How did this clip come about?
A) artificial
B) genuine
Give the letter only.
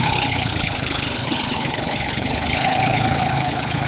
A